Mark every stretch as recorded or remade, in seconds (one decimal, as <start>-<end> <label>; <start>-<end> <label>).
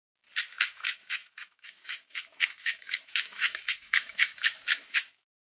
0.0-0.5 recorded; 0.5-5.4 remade